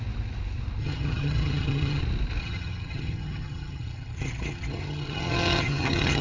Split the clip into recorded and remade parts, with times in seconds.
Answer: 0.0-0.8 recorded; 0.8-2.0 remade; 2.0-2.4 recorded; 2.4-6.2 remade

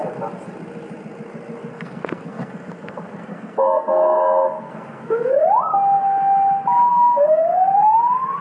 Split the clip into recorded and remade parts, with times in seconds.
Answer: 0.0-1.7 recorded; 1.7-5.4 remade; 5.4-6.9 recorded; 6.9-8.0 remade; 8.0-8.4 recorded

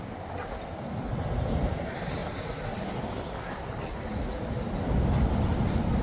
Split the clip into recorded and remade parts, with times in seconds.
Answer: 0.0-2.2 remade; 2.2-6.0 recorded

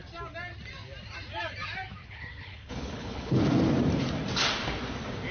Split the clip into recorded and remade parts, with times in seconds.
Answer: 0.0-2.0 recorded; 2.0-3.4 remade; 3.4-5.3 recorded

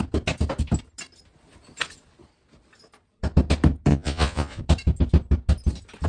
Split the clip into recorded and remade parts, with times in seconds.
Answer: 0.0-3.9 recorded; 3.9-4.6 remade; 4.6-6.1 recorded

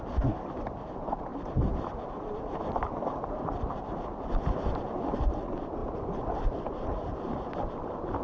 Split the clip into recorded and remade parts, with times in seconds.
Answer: 0.0-8.2 recorded